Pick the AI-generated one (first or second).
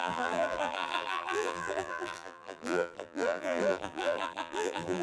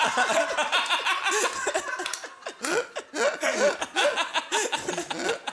first